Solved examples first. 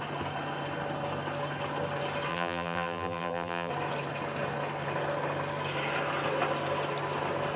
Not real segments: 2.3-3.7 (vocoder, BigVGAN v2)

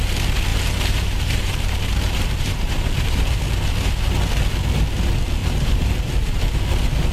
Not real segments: 0.5-3.4 (vocoder, BigVGAN v2); 5.4-6.4

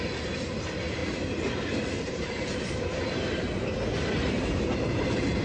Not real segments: 1.0-2.8 (vocoder, BigVGAN v2); 4.2-5.4

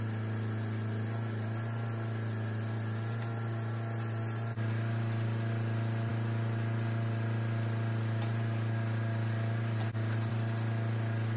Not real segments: none

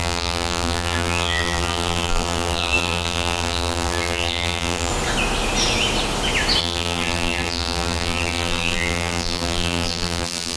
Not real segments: 0.0-4.9 (vocoder, BigVGAN v2); 6.6-10.6

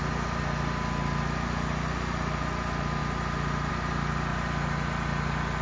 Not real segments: 4.3-4.9 (vocoder, BigVGAN v2)